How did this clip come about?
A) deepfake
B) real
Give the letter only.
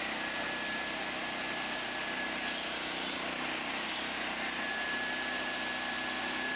B